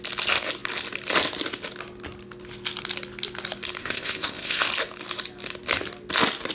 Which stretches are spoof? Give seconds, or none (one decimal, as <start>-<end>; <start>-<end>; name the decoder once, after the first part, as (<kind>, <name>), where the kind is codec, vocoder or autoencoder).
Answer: 3.8-4.6 (codec, ZipCodec)